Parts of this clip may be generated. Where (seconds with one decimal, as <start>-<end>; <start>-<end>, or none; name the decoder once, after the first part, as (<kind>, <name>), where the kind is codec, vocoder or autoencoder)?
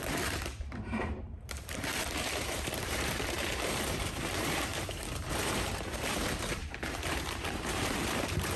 0.0-4.7 (vocoder, BigVGAN v2); 5.3-8.6